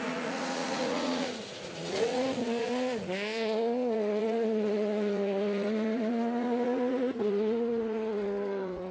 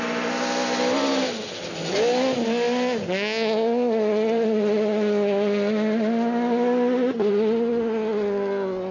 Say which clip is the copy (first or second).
first